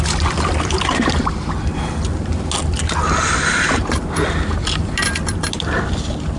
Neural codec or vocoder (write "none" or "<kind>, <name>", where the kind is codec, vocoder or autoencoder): none